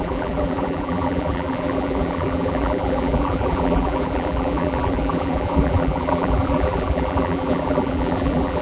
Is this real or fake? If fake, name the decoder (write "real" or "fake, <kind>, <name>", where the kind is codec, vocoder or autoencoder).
fake, vocoder, BigVGAN v2